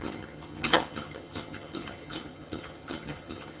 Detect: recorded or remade remade